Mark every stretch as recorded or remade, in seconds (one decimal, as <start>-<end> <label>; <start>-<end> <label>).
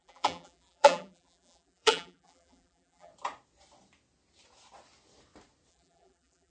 0.0-3.1 remade; 3.1-5.7 recorded; 5.7-6.5 remade